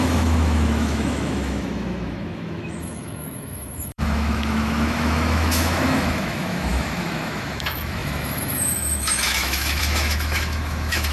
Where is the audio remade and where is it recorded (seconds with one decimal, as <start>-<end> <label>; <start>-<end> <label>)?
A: 0.0-11.1 remade